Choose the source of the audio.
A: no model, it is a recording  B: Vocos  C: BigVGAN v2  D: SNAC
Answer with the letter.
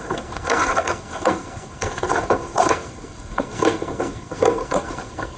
D